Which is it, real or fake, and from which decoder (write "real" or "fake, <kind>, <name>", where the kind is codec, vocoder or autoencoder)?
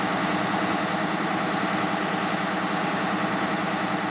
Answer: real